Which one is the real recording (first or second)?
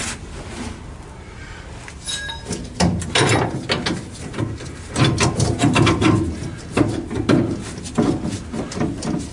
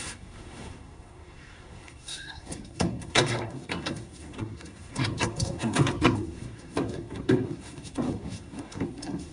first